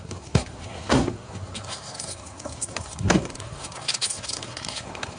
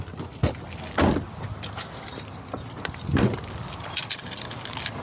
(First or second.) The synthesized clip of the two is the first